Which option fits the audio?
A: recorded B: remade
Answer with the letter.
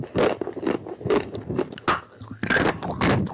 A